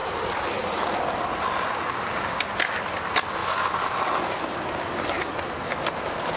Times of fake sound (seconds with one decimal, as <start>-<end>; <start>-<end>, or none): 1.7-2.4